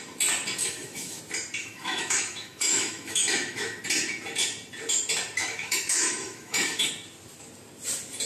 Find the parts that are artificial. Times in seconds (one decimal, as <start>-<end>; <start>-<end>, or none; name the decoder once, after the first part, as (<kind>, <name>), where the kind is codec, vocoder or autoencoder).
0.6-1.2 (autoencoder, DAC-VAE); 1.6-3.8; 5.4-6.9